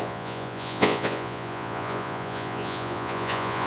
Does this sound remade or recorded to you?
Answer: remade